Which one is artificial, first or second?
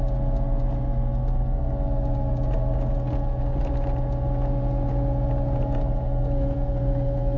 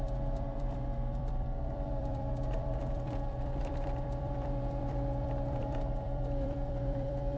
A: second